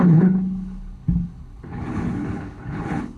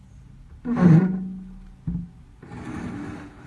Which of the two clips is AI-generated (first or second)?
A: first